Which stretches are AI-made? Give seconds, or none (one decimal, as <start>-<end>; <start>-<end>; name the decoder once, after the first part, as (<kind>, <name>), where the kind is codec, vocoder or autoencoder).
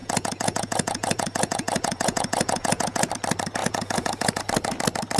0.0-3.1 (vocoder, Vocos); 3.6-4.4